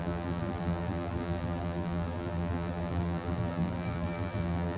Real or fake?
fake